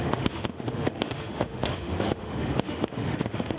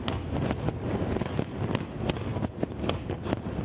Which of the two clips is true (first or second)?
second